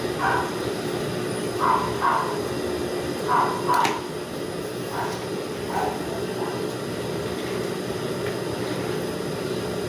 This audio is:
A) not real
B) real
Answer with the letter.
B